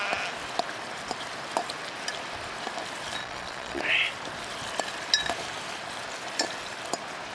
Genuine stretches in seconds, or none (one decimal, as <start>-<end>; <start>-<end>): 0.0-3.2; 3.8-7.3

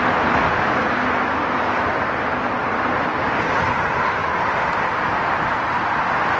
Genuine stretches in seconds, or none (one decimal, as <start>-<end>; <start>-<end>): 0.0-2.6; 3.5-4.2; 6.0-6.4